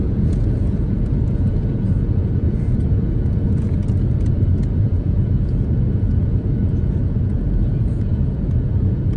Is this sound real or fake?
fake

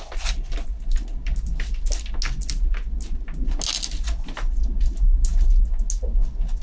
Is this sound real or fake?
real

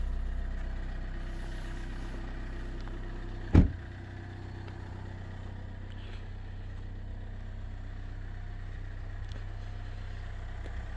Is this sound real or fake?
real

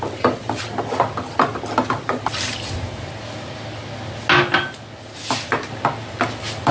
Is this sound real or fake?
real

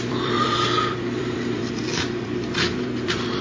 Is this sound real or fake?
fake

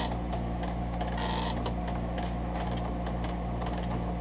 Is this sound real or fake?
real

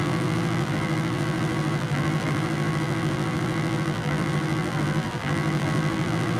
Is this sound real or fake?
fake